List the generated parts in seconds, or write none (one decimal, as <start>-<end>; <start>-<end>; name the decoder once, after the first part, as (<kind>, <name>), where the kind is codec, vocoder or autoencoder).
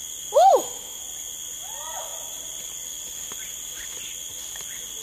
0.5-1.0 (autoencoder, DAC-VAE)